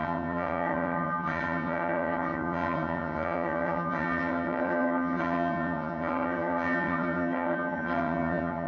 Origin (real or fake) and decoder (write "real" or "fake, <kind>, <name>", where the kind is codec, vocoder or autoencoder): fake, vocoder, HiFi-GAN